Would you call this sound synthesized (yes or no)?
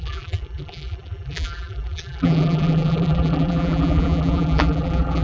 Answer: yes